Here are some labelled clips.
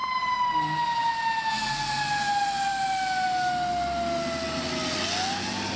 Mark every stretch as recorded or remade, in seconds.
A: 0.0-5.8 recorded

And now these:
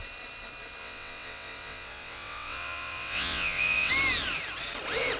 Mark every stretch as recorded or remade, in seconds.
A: 0.0-0.8 recorded; 0.8-3.9 remade; 3.9-5.2 recorded

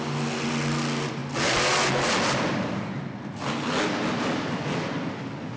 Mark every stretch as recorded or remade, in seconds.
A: 0.0-5.6 recorded

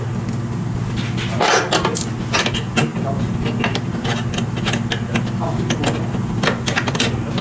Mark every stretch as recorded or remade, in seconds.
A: 0.0-7.4 recorded

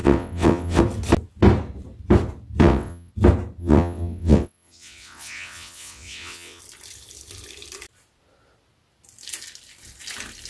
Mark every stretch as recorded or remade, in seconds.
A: 0.0-0.8 remade; 0.8-2.6 recorded; 2.6-3.1 remade; 3.1-3.6 recorded; 3.6-6.6 remade; 6.6-10.5 recorded

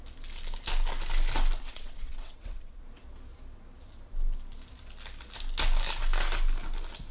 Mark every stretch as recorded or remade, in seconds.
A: 0.0-1.6 recorded; 1.6-2.8 remade; 2.8-7.1 recorded